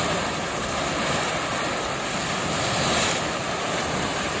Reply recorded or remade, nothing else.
recorded